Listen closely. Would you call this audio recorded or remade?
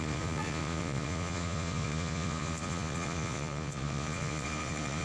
remade